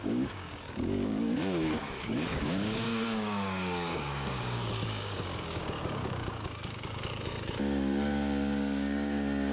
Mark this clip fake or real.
fake